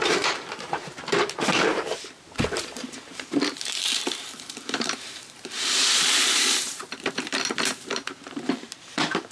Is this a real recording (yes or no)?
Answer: no